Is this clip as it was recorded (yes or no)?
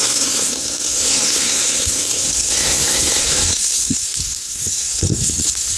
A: no